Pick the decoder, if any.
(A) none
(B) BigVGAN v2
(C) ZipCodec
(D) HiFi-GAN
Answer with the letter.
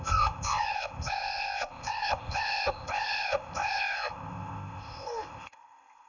C